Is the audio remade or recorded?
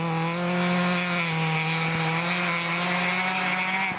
recorded